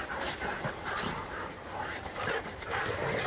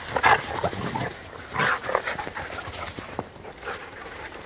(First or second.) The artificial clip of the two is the first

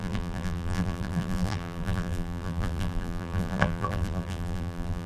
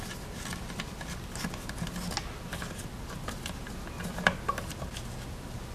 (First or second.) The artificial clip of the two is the first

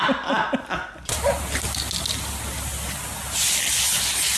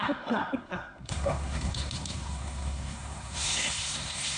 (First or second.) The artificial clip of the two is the second